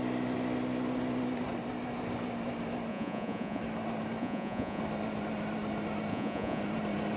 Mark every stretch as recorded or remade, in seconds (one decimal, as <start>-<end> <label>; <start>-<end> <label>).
0.0-2.9 recorded; 2.9-3.6 remade; 3.6-4.2 recorded; 4.2-4.8 remade; 4.8-6.1 recorded; 6.1-6.6 remade; 6.6-7.2 recorded

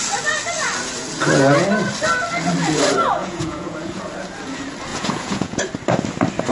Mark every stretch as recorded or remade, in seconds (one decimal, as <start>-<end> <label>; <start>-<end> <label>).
0.0-3.2 recorded; 3.2-4.0 remade; 4.0-4.9 recorded; 4.9-5.6 remade; 5.6-6.5 recorded

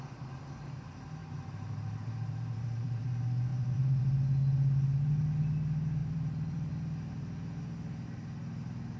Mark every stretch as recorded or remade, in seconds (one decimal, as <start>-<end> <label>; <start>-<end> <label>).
0.0-1.2 recorded; 1.2-3.1 remade; 3.1-3.5 recorded; 3.5-4.0 remade; 4.0-6.0 recorded; 6.0-6.7 remade; 6.7-9.0 recorded